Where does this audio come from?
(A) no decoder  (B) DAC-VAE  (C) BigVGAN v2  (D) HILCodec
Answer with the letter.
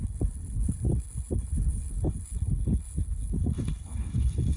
D